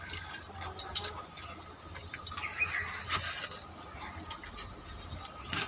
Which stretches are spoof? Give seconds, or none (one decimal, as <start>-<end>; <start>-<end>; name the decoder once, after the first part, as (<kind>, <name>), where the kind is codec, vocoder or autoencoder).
none